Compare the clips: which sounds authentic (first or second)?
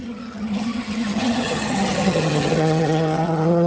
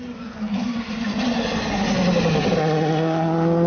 second